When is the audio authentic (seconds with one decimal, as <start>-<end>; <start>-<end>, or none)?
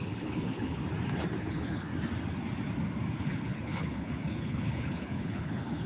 0.8-1.4; 1.9-3.2